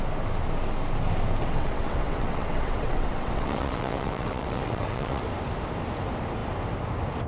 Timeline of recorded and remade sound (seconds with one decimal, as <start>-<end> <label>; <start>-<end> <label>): 0.0-1.4 recorded; 1.4-5.2 remade; 5.2-7.3 recorded

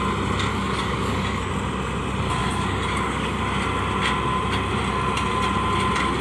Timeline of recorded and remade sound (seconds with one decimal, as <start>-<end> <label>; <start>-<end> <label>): 0.0-0.5 recorded; 0.5-1.5 remade; 1.5-2.4 recorded; 2.4-3.4 remade; 3.4-6.2 recorded